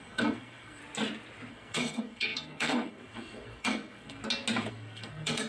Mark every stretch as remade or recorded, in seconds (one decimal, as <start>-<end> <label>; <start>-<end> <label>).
0.0-0.8 remade; 0.8-1.5 recorded; 1.5-4.2 remade; 4.2-4.7 recorded; 4.7-5.5 remade